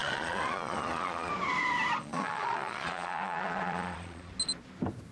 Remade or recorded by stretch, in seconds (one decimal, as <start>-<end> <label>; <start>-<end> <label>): 0.0-1.3 remade; 1.3-2.0 recorded; 2.0-4.3 remade; 4.3-5.1 recorded